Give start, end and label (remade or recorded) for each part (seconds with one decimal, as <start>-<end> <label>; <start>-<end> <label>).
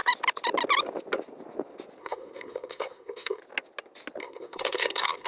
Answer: 0.0-2.0 recorded; 2.0-3.4 remade; 3.4-4.2 recorded; 4.2-5.3 remade